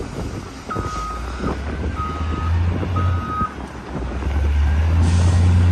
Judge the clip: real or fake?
real